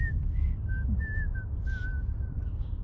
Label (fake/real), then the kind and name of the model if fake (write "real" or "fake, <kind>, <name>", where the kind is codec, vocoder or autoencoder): real